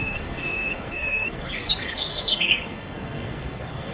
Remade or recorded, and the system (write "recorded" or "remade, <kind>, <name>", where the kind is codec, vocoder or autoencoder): remade, codec, SNAC